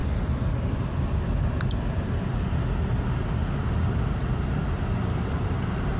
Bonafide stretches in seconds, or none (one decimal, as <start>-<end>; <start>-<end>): 2.1-6.0